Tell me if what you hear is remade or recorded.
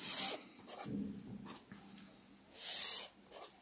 recorded